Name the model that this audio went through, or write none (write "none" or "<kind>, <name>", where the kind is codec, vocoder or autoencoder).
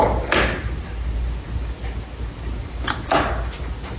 none